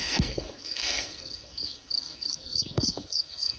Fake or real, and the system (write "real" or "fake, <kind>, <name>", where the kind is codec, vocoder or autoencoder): fake, codec, SNAC